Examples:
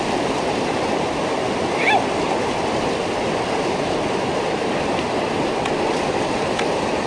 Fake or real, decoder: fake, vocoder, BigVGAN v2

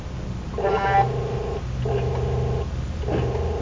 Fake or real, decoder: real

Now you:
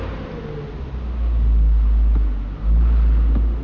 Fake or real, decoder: real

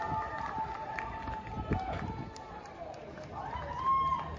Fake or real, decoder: real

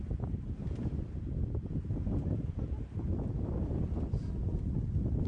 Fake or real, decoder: real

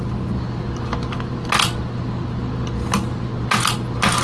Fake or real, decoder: real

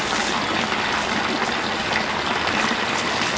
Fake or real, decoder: real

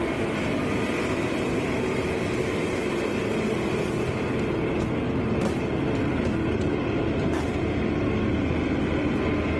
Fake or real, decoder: real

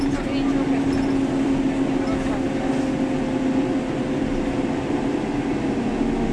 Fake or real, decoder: real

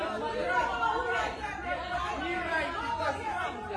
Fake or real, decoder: real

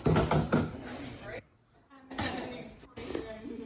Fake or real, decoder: real